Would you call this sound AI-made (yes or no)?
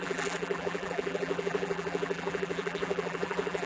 yes